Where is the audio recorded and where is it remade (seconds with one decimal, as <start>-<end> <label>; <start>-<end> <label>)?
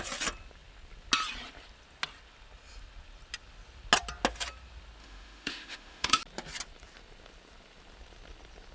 0.0-5.0 recorded; 5.0-6.2 remade; 6.2-8.7 recorded